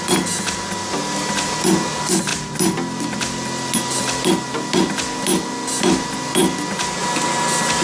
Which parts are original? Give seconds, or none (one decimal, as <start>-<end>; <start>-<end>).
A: 0.0-7.8